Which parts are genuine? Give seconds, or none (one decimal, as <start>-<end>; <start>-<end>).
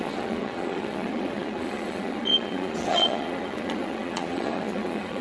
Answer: none